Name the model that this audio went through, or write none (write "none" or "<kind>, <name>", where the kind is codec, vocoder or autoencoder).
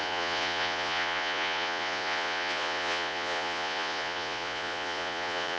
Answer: vocoder, Vocos